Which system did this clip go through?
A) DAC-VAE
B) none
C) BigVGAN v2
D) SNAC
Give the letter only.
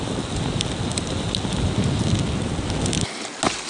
B